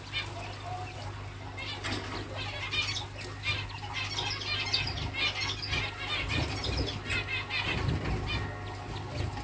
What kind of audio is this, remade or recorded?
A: recorded